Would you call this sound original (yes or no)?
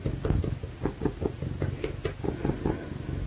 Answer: yes